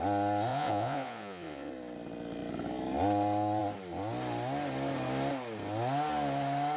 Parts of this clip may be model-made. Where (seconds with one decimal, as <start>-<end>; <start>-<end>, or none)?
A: 0.5-1.7